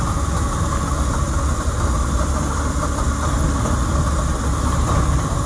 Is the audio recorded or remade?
recorded